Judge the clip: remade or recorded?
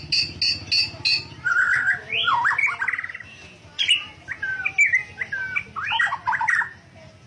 recorded